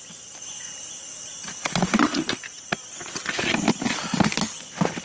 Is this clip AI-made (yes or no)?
no